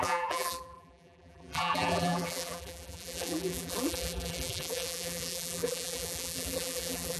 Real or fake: fake